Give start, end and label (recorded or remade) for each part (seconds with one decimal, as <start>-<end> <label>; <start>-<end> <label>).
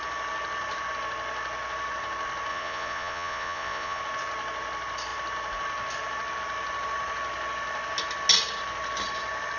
0.0-2.5 recorded; 2.5-4.0 remade; 4.0-9.6 recorded